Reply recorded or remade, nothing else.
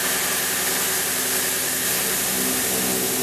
recorded